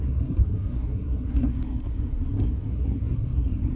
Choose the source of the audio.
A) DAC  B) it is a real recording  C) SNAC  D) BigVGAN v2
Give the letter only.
C